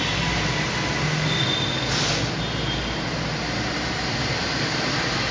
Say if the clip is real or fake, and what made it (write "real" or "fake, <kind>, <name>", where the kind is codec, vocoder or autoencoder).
real